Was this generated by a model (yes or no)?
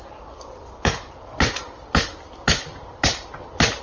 no